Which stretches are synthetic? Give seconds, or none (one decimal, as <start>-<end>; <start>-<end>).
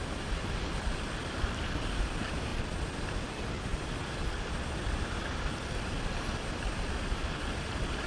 none